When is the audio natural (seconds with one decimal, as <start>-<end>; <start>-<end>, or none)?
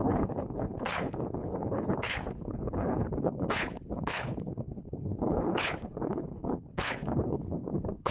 none